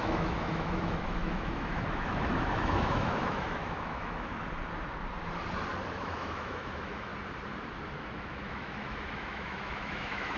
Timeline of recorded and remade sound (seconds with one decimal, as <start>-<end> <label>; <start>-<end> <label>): 0.0-4.4 remade; 4.4-5.9 recorded; 5.9-7.1 remade; 7.1-8.0 recorded; 8.0-10.4 remade